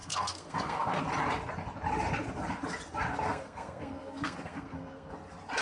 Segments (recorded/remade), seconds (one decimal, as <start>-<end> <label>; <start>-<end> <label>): 0.0-1.0 remade; 1.0-3.1 recorded; 3.1-5.1 remade; 5.1-5.6 recorded